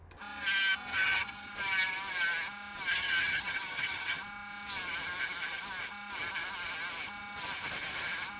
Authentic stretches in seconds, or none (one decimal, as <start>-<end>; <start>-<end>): 0.0-0.9; 1.5-2.9; 4.2-8.4

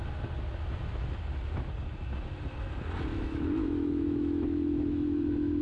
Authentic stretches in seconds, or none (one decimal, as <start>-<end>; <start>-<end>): 0.0-3.1

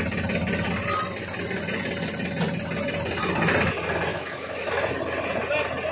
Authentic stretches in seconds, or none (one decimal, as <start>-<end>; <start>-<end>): 0.0-4.1; 4.7-5.9

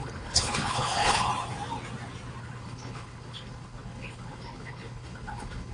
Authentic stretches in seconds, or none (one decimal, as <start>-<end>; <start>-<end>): 1.3-2.4

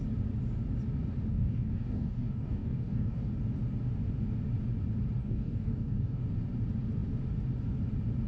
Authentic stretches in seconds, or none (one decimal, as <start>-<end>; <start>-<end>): 0.0-1.3; 3.3-5.2; 6.2-8.3

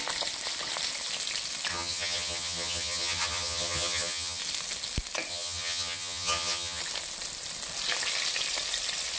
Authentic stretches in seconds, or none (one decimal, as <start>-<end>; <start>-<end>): 0.0-1.7; 4.4-5.3; 6.8-9.2

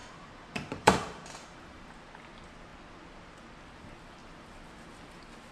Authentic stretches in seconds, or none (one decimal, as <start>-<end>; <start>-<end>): 2.0-5.5

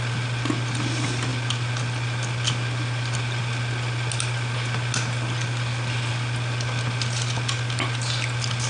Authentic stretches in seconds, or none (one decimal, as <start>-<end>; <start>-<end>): 0.0-8.7